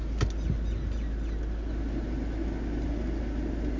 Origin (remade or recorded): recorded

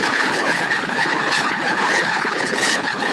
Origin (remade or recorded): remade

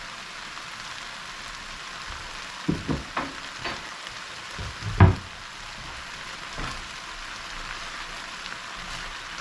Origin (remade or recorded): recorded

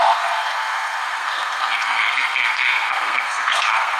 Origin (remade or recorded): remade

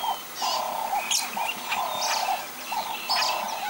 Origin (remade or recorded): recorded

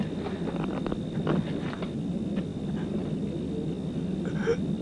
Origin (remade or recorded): recorded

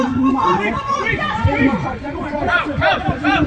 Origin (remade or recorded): remade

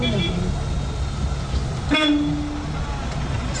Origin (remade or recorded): recorded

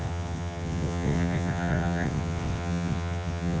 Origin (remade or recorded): remade